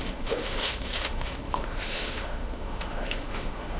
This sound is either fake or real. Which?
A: fake